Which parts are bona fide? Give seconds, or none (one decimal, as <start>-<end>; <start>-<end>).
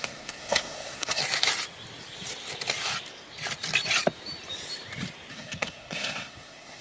1.2-5.3